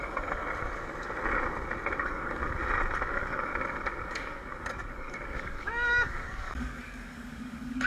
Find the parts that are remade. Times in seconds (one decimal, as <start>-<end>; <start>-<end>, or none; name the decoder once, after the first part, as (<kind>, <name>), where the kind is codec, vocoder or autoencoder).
0.0-0.4 (codec, DAC); 2.0-2.4; 3.1-3.5; 4.0-7.9